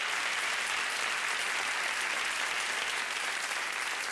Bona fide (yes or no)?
yes